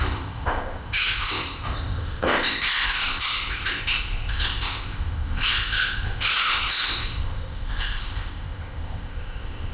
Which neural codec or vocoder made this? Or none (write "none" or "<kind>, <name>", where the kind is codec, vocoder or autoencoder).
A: codec, ZipCodec